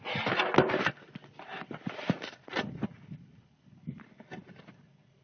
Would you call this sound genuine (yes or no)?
yes